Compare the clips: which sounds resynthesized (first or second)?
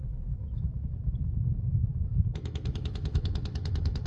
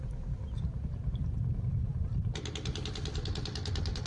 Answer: first